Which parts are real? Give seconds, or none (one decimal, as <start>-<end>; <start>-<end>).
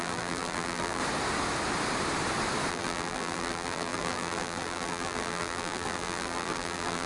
1.0-2.7